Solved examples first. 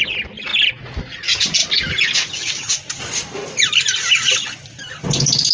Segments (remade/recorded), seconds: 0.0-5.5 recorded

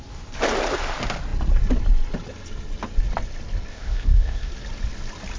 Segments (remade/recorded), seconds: 0.0-3.7 recorded; 3.7-4.5 remade; 4.5-5.4 recorded

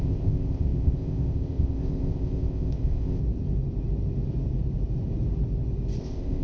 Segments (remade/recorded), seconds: 0.0-3.2 remade; 3.2-6.0 recorded; 6.0-6.4 remade

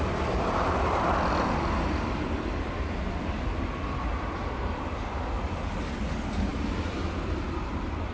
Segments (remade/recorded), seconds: 0.0-8.1 recorded

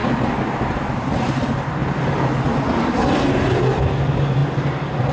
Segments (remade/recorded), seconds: 0.0-5.1 recorded

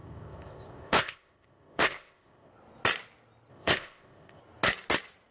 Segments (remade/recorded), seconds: 0.0-2.5 remade; 2.5-3.5 recorded; 3.5-4.4 remade; 4.4-5.3 recorded